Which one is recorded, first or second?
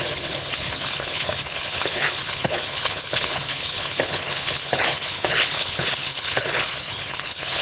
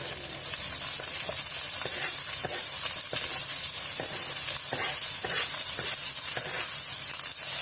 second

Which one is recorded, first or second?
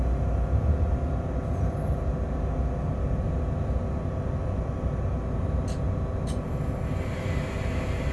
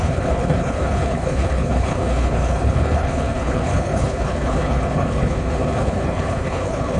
first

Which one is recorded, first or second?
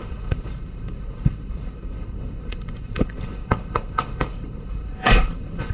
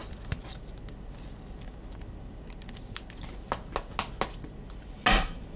second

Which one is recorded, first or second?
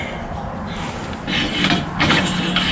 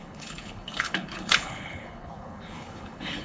first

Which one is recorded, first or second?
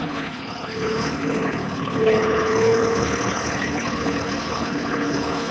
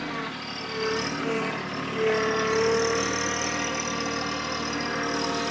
second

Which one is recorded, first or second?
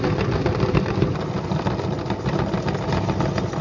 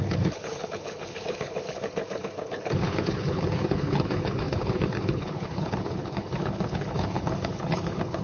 first